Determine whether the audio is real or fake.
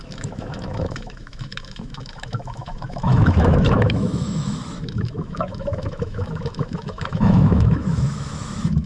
fake